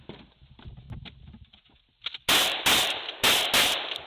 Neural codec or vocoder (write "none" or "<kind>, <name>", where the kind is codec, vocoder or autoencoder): none